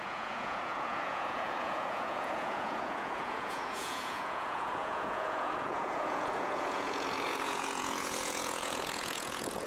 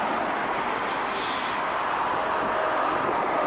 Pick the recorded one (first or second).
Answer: second